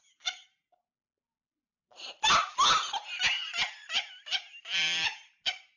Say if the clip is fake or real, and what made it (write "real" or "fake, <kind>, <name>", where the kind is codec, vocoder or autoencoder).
real